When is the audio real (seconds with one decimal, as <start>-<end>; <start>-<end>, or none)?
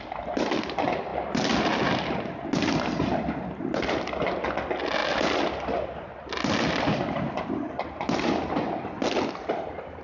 0.0-10.0